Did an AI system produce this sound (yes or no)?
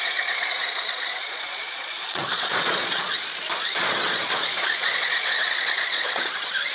yes